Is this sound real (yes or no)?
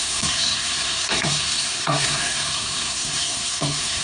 no